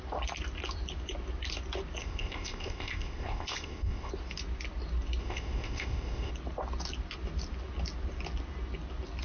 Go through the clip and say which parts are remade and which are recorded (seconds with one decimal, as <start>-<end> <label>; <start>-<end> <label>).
0.0-2.0 recorded; 2.0-4.1 remade; 4.1-5.2 recorded; 5.2-6.3 remade; 6.3-9.2 recorded